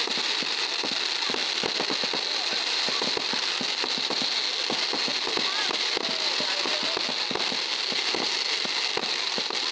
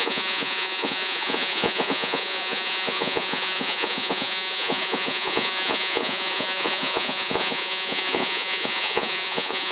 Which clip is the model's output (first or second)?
second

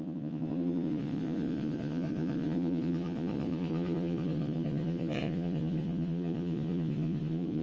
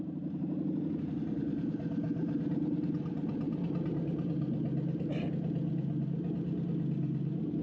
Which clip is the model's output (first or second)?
first